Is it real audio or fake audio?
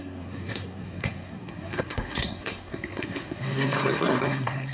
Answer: fake